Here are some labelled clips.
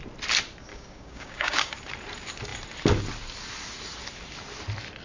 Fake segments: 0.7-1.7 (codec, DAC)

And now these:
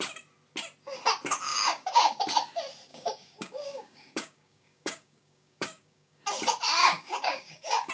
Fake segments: 1.5-2.2 (codec, DAC); 2.9-6.2; 6.8-7.9

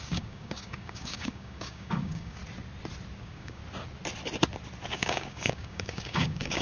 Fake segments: 0.0-2.4 (codec, DAC); 3.2-3.6; 4.9-6.6

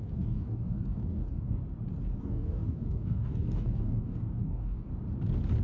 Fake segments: 0.0-1.6 (codec, DAC); 2.2-4.9